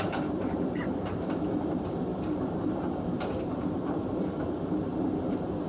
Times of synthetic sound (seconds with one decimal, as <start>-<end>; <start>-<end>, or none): 0.0-5.7